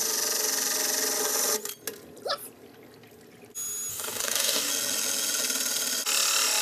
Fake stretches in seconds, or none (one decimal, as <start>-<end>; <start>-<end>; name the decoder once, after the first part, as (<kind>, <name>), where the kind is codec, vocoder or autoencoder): 3.9-4.7 (codec, DAC)